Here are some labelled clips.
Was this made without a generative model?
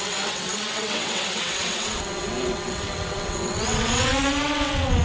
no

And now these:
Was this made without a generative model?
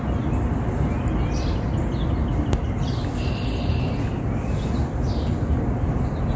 yes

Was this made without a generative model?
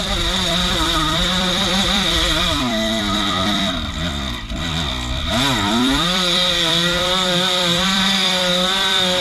no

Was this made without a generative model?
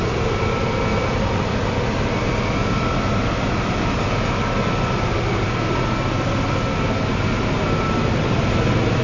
yes